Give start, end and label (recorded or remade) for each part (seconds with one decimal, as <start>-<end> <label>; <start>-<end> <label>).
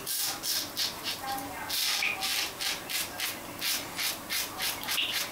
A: 0.0-5.3 recorded